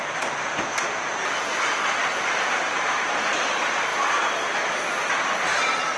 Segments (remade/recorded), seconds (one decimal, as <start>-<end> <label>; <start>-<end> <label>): 0.0-0.7 recorded; 0.7-1.3 remade; 1.3-2.0 recorded; 2.0-2.6 remade; 2.6-6.0 recorded